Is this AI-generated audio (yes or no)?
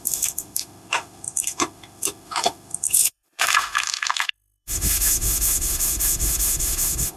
yes